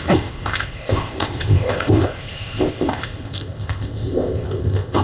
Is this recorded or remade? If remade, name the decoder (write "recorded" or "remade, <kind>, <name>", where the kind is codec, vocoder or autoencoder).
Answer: remade, codec, ZipCodec